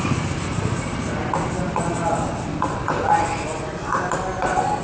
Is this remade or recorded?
recorded